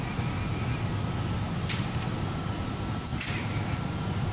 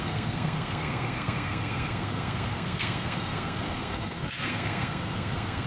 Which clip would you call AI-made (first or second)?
second